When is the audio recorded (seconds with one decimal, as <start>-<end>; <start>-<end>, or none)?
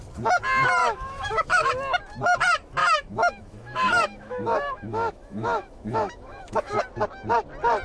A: 0.0-0.8; 1.7-2.8; 6.8-7.8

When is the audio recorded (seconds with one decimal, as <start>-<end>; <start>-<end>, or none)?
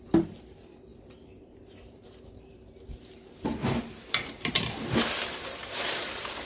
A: none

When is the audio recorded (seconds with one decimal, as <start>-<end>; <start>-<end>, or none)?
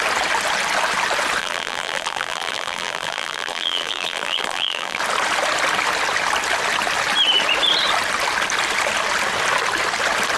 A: 0.0-1.4; 5.0-10.4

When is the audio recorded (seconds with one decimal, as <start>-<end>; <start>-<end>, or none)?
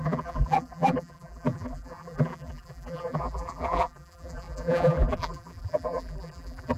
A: none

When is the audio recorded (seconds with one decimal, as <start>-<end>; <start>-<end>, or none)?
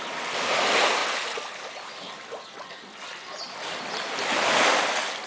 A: 0.0-5.3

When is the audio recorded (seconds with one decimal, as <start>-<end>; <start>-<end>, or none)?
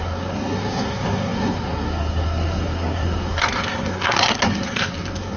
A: none